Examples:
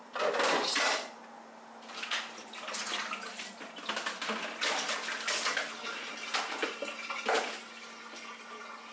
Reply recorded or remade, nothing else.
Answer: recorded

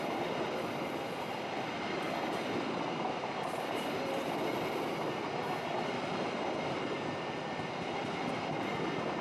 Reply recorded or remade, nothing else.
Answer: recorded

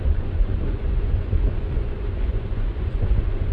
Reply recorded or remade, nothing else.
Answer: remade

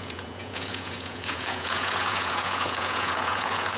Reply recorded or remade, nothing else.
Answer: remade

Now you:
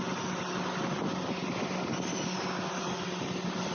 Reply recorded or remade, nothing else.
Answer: recorded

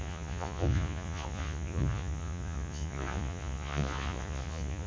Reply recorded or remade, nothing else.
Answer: remade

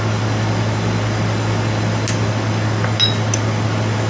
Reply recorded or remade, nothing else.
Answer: recorded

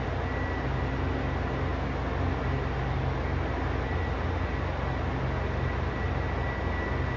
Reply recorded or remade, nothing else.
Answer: recorded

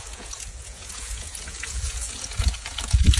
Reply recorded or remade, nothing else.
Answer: remade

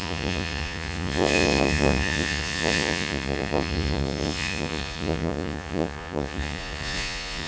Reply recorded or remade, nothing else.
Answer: remade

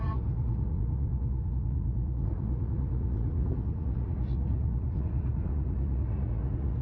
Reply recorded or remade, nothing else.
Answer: remade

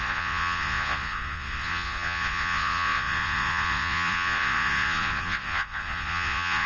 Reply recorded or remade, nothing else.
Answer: remade